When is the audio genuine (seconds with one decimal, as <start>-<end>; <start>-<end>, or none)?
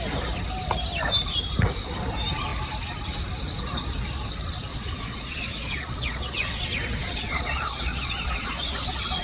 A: 0.0-4.7; 6.6-7.0